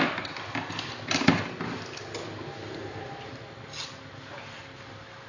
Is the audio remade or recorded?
recorded